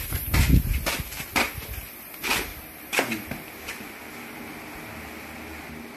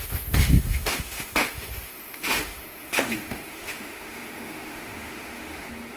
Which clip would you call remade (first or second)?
second